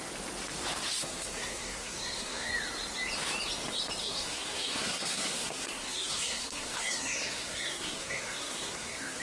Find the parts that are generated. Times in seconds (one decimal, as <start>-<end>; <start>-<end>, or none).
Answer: 1.0-2.5; 4.0-9.2